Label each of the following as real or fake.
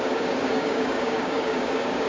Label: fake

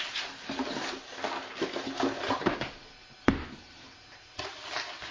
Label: real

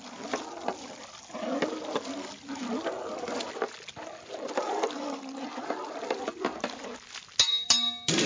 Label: real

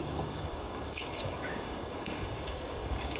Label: fake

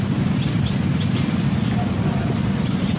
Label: real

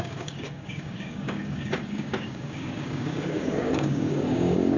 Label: fake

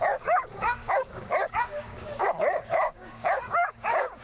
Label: fake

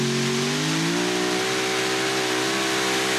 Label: real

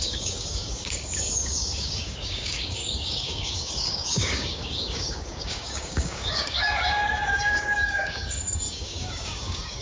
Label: fake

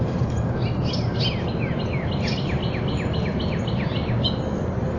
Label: real